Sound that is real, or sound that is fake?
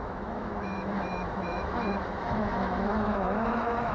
fake